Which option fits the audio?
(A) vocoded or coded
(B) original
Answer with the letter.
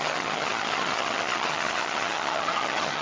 A